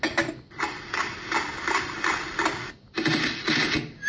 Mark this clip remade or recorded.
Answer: recorded